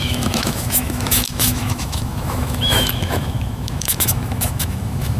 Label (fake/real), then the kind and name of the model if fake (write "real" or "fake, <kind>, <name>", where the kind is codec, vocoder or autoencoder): fake, autoencoder, DAC-VAE